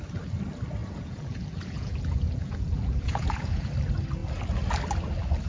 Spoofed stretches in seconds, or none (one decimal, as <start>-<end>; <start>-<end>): 0.8-3.7